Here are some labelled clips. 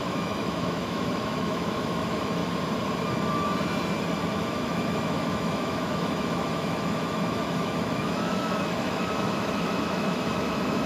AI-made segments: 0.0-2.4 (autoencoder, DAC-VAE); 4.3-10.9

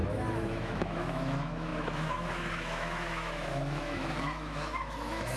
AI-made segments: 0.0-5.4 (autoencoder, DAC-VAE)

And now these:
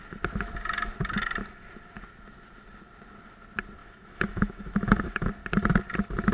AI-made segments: 3.8-5.3 (autoencoder, DAC-VAE)

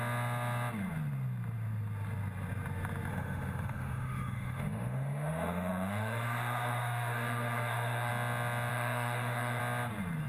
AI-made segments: 3.1-8.1 (autoencoder, DAC-VAE); 8.7-9.6